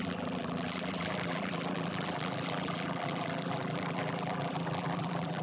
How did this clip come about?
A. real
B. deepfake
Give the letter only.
B